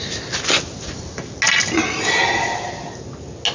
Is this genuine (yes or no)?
yes